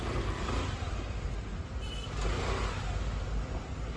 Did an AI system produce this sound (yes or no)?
no